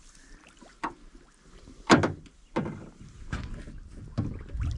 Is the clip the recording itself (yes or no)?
yes